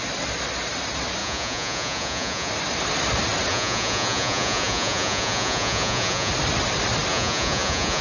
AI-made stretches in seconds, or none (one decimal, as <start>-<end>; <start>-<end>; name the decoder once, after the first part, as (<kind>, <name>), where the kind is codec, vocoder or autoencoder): 1.2-2.5 (vocoder, Vocos); 3.5-6.3; 7.1-8.0